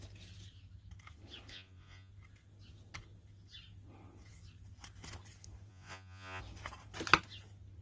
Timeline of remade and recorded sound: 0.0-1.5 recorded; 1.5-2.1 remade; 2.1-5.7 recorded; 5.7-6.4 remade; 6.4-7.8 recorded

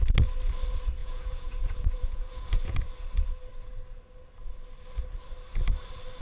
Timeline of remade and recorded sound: 0.0-1.0 recorded; 1.0-2.8 remade; 2.8-6.2 recorded

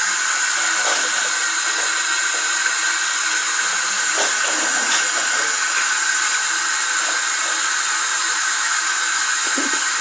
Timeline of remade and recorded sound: 0.0-8.2 recorded; 8.2-9.2 remade; 9.2-10.0 recorded

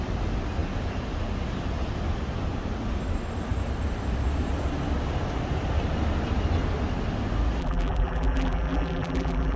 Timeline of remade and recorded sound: 0.0-7.6 recorded; 7.6-9.6 remade

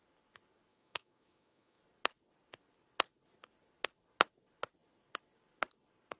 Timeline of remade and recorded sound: 0.0-0.7 recorded; 0.7-1.8 remade; 1.8-6.2 recorded

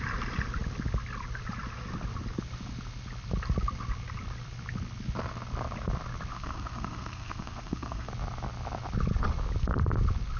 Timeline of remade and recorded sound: 0.0-6.3 recorded; 6.3-8.1 remade; 8.1-10.4 recorded